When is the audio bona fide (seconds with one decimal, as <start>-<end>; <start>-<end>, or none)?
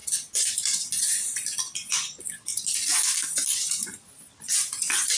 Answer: 0.0-5.2